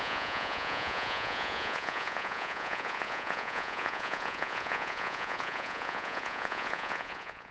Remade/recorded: remade